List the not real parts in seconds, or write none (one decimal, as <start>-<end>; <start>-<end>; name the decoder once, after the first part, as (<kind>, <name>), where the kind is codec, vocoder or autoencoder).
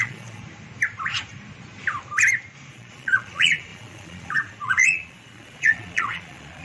0.0-0.4 (vocoder, Vocos); 2.7-6.6